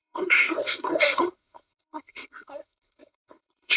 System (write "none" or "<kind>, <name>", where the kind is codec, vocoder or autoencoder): codec, SNAC